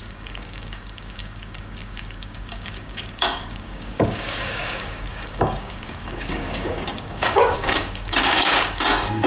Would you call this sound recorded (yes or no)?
no